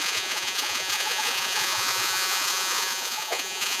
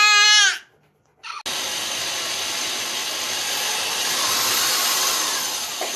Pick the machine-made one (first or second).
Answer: first